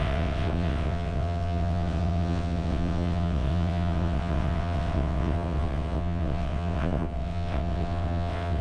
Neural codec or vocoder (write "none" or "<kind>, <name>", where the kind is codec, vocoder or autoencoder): vocoder, WaveNeXt